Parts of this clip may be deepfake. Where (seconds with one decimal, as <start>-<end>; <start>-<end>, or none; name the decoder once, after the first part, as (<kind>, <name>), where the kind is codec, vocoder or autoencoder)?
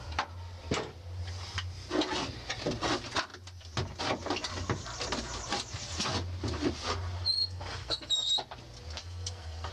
7.4-8.1 (codec, SNAC); 9.0-9.7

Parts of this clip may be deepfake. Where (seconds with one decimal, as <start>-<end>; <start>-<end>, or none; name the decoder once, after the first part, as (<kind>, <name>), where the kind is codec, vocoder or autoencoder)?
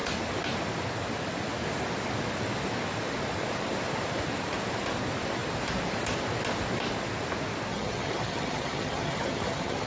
7.7-9.9 (vocoder, HiFi-GAN)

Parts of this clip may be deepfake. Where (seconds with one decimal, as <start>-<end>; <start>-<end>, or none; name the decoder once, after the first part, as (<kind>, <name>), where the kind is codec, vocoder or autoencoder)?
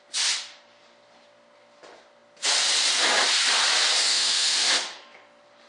4.1-4.7 (autoencoder, DAC-VAE)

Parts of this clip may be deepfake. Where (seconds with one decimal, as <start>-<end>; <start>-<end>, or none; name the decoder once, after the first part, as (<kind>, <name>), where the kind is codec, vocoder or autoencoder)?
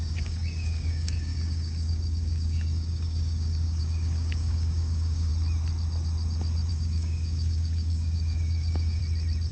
0.0-5.3 (codec, DAC); 6.7-9.0